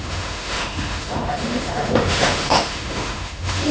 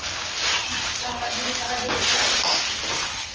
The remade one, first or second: first